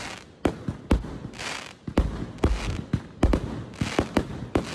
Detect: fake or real real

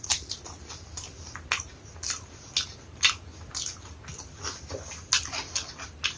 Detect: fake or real real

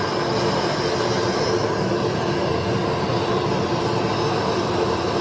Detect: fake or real real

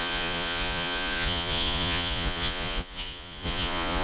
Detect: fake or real fake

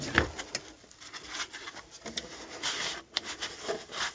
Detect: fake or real real